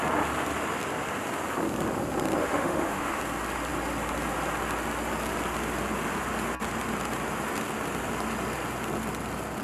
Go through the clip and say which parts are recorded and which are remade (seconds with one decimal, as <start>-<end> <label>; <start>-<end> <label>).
0.0-2.4 recorded; 2.4-3.2 remade; 3.2-9.6 recorded